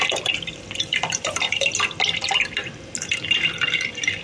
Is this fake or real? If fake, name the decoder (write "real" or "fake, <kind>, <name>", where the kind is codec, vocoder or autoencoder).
real